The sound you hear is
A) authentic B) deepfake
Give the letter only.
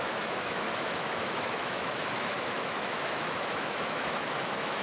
B